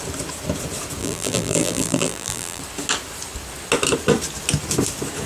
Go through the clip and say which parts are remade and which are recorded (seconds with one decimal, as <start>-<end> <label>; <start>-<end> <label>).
0.0-1.0 recorded; 1.0-2.6 remade; 2.6-5.3 recorded